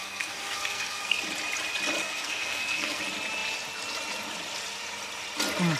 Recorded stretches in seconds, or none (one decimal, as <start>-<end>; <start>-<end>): 1.2-2.0; 3.0-5.8